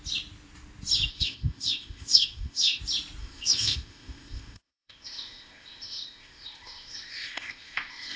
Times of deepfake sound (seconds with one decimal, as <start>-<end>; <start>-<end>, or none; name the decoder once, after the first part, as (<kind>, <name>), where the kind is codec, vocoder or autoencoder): 1.1-2.8 (codec, ZipCodec); 3.2-8.2